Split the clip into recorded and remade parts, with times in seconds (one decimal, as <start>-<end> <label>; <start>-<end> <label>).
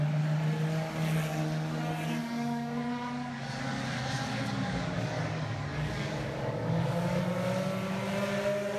0.0-2.2 recorded; 2.2-7.2 remade; 7.2-8.8 recorded